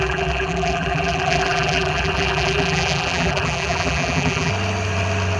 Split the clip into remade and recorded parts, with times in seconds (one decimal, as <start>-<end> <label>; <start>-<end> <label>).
0.0-4.5 remade; 4.5-5.4 recorded